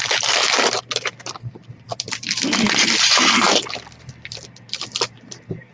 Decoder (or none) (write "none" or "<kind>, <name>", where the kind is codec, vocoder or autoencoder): vocoder, BigVGAN v2